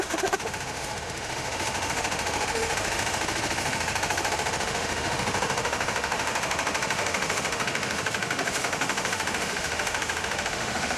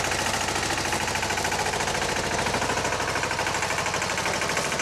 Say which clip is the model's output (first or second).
first